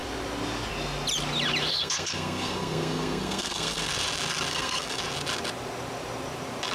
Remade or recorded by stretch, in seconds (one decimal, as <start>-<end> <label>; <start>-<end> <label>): 0.0-1.7 recorded; 1.7-3.9 remade; 3.9-4.5 recorded; 4.5-5.0 remade; 5.0-6.7 recorded